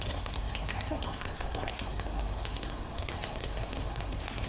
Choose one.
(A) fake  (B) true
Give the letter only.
A